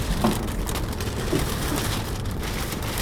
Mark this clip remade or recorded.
recorded